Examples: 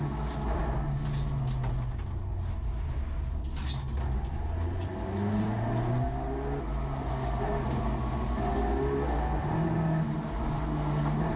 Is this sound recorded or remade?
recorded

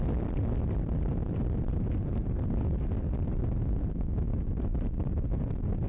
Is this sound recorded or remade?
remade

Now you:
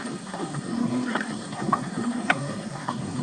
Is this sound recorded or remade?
remade